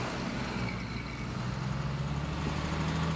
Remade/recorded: recorded